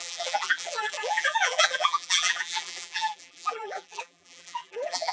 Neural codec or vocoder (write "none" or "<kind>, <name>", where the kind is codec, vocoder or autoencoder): vocoder, BigVGAN v2